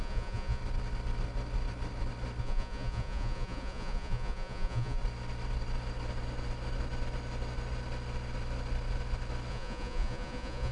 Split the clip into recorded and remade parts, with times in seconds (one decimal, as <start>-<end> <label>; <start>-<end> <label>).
0.0-0.6 remade; 0.6-2.4 recorded; 2.4-5.0 remade; 5.0-9.5 recorded; 9.5-10.7 remade